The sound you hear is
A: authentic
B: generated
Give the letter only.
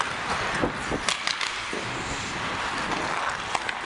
A